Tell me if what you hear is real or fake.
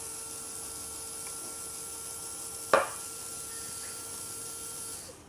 real